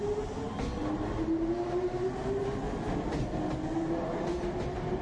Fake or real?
real